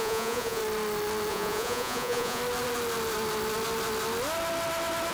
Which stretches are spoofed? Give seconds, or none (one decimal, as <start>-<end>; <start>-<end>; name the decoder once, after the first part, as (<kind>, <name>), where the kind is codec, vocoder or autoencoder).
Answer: 0.0-0.6 (vocoder, Vocos); 1.3-2.4